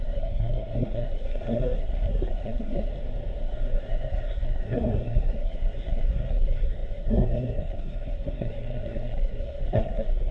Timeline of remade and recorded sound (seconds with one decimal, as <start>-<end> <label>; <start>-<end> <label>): 0.0-2.9 remade; 2.9-3.4 recorded; 3.4-10.3 remade